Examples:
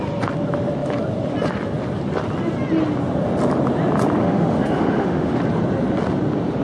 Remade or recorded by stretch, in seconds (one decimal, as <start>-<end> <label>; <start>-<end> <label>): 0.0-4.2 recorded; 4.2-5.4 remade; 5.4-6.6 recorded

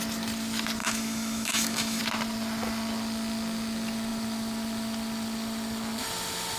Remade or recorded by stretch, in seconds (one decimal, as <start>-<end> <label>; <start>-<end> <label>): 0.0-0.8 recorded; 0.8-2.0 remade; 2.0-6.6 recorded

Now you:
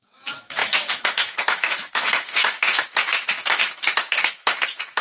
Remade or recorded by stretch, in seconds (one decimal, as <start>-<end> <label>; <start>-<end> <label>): 0.0-5.0 remade